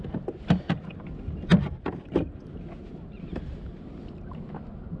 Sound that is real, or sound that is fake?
real